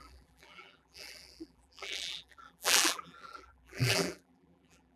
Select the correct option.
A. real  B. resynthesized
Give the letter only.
B